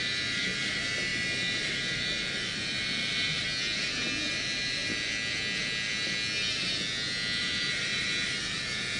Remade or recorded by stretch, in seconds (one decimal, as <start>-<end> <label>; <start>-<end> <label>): 0.0-3.4 remade; 3.4-4.3 recorded; 4.3-4.9 remade; 4.9-7.4 recorded; 7.4-9.0 remade